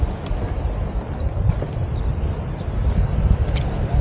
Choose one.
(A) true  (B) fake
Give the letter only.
A